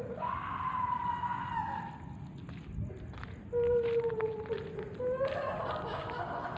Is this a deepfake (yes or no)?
no